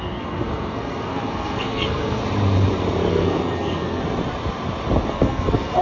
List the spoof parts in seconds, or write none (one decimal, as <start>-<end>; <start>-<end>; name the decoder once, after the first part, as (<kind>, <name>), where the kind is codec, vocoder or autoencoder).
0.0-2.2 (codec, SNAC); 3.1-4.0; 5.1-5.8